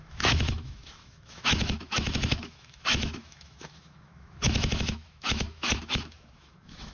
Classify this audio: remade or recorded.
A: remade